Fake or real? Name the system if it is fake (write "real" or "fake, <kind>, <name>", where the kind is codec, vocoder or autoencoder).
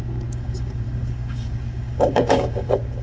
fake, codec, DAC